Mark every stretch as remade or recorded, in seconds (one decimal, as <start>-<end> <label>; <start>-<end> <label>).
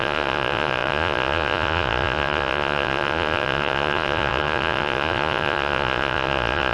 0.0-6.7 remade